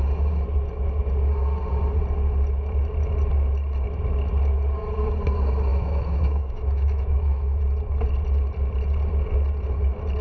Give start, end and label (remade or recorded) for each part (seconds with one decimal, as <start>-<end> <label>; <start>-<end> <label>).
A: 0.0-5.7 recorded; 5.7-7.6 remade; 7.6-10.2 recorded